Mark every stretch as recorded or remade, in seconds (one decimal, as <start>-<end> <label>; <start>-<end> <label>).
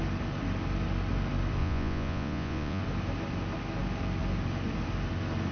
0.0-1.6 recorded; 1.6-2.8 remade; 2.8-5.5 recorded